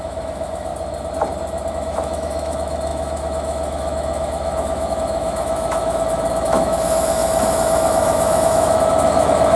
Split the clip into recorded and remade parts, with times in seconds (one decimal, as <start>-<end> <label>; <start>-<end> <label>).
0.0-0.7 remade; 0.7-1.7 recorded; 1.7-9.6 remade